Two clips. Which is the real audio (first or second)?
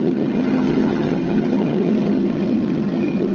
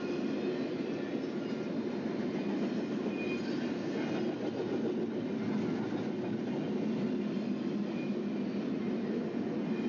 second